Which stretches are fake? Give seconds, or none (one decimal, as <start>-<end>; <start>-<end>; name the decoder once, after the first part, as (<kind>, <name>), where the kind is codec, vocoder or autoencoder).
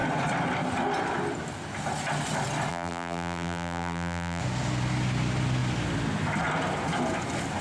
2.7-4.4 (vocoder, BigVGAN v2)